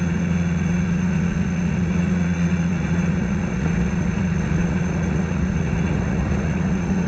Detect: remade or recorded remade